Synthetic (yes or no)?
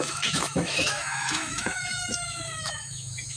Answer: yes